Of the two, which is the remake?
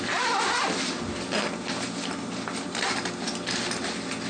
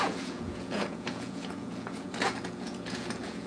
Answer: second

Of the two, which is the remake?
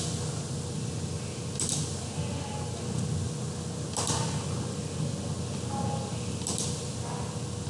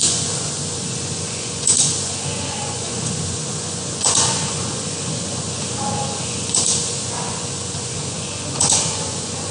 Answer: second